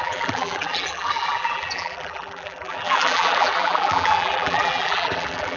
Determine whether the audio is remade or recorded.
remade